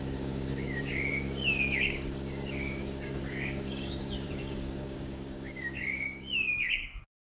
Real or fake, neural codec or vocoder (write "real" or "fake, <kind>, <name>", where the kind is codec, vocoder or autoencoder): fake, codec, DAC